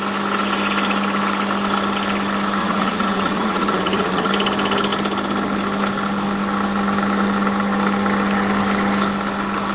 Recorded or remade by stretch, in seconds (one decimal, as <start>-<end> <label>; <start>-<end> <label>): 0.0-2.6 recorded; 2.6-4.3 remade; 4.3-9.7 recorded